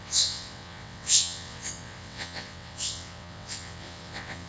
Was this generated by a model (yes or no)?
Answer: yes